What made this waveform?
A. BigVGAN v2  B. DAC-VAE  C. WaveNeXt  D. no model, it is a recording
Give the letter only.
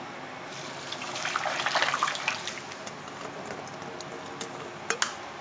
D